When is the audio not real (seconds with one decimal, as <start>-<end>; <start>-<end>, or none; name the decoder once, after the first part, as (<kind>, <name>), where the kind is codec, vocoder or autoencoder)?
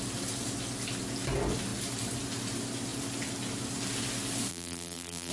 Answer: 4.5-5.3 (vocoder, BigVGAN v2)